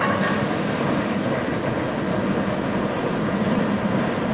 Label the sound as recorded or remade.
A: recorded